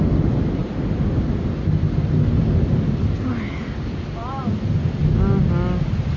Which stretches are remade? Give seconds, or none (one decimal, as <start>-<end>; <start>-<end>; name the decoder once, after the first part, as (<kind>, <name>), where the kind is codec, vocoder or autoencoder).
none